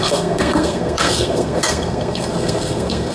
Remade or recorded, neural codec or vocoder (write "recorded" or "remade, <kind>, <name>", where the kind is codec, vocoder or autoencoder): remade, codec, SNAC